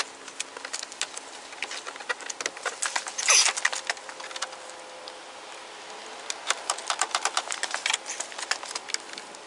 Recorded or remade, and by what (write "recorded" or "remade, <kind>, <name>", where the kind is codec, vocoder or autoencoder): recorded